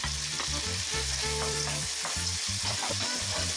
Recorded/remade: remade